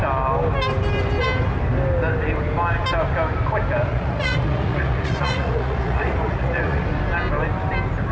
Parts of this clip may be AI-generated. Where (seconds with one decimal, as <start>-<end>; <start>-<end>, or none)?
3.9-6.8